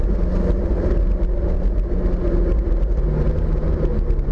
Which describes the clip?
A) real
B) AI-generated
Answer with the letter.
A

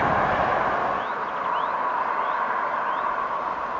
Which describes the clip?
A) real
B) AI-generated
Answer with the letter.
A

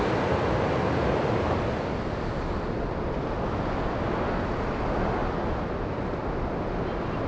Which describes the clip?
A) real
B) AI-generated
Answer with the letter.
A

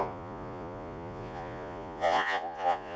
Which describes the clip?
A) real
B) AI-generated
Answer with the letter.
B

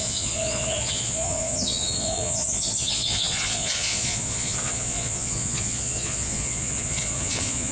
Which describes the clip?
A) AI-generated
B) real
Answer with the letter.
A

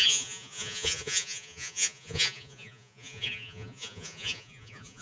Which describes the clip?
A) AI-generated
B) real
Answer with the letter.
A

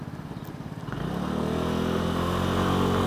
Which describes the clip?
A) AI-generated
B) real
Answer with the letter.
B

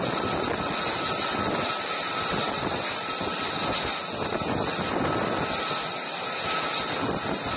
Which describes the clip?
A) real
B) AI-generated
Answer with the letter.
A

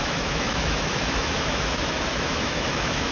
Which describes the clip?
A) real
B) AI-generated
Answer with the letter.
B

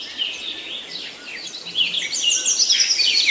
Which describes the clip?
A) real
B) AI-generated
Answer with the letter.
A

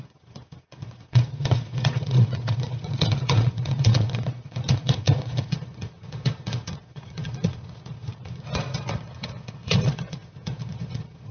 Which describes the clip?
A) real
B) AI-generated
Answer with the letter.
B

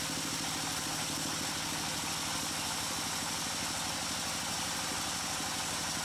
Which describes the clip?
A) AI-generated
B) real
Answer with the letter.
B